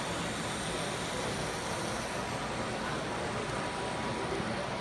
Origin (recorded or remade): recorded